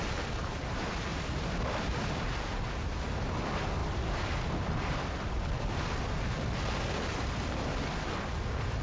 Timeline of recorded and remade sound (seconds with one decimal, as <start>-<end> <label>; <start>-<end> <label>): 0.0-3.8 recorded; 3.8-8.1 remade; 8.1-8.8 recorded